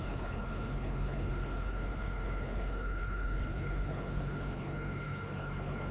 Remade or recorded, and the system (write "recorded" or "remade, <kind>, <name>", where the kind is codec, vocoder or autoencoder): remade, codec, HILCodec